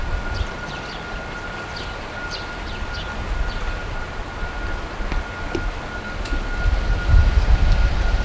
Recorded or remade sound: recorded